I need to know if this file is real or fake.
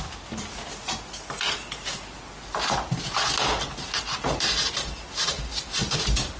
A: real